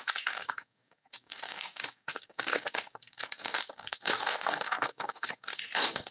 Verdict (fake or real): fake